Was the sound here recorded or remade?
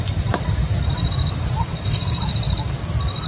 recorded